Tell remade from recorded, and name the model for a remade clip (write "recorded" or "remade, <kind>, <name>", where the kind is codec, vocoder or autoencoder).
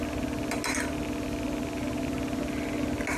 recorded